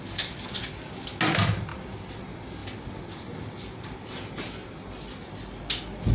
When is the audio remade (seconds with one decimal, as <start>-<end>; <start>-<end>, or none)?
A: none